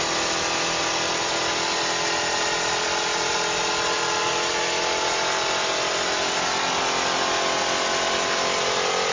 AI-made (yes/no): no